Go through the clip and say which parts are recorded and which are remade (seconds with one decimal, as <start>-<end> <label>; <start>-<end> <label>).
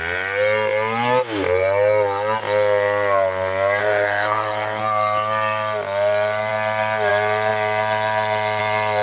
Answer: 0.0-3.8 recorded; 3.8-4.8 remade; 4.8-9.0 recorded